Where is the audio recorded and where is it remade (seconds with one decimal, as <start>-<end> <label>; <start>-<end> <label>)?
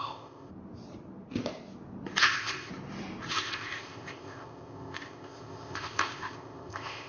0.0-0.5 remade; 0.5-2.2 recorded; 2.2-2.7 remade; 2.7-3.3 recorded; 3.3-7.1 remade